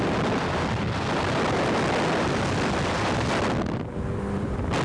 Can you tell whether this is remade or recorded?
recorded